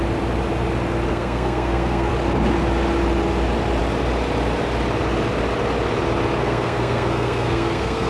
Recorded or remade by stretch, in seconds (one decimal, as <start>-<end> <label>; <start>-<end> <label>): 0.0-1.1 recorded; 1.1-2.1 remade; 2.1-6.4 recorded; 6.4-8.1 remade